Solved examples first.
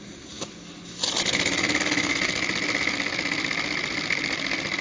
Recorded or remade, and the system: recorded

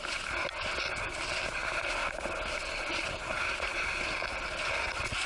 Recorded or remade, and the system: recorded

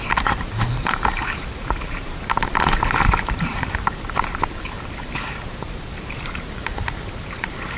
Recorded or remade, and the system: remade, vocoder, BigVGAN v2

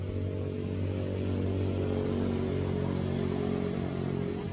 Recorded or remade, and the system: recorded